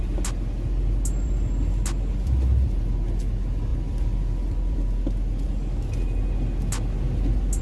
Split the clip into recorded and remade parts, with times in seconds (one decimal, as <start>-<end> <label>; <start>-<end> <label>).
0.0-7.6 recorded